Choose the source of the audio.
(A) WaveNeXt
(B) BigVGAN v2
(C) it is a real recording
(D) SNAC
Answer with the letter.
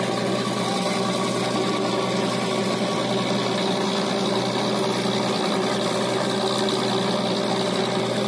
C